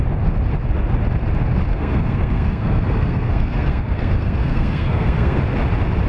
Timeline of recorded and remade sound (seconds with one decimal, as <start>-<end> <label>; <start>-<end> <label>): 0.0-1.7 recorded; 1.7-5.4 remade; 5.4-6.1 recorded